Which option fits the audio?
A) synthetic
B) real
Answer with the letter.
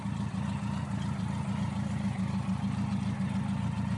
B